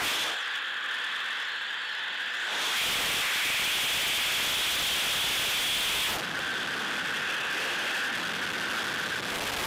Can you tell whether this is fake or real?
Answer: real